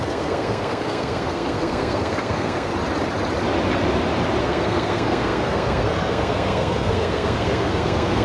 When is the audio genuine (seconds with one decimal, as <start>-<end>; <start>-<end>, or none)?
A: 2.7-4.4